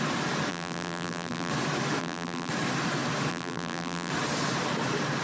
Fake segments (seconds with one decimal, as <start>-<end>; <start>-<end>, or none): 0.5-1.5; 2.0-2.5; 3.3-4.1